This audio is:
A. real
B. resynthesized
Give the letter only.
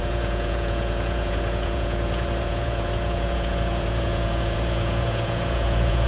B